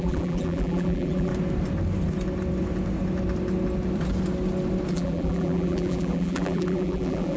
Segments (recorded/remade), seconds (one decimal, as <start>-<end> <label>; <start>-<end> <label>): 0.0-1.3 remade; 1.3-4.9 recorded; 4.9-7.4 remade